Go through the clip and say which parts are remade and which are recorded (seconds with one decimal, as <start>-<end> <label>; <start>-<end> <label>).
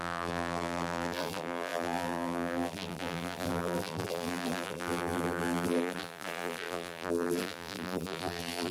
0.0-8.7 remade